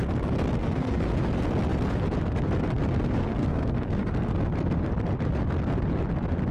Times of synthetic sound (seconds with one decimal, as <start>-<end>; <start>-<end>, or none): 0.6-1.1; 3.2-4.3